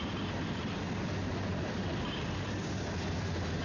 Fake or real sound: real